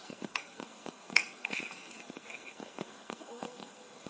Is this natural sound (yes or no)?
no